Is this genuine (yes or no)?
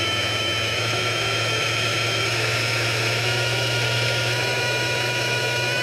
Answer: no